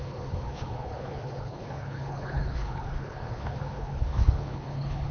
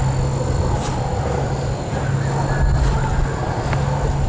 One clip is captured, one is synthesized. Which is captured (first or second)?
second